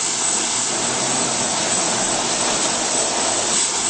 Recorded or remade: remade